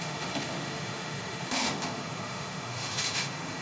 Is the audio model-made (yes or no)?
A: yes